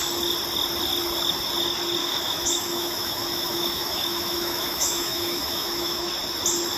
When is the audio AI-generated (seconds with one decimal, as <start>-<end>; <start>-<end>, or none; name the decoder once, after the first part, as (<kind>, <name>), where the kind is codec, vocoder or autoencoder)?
2.0-6.1 (autoencoder, DAC-VAE)